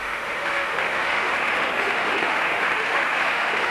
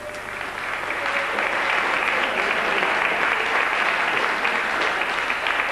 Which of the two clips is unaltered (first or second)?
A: second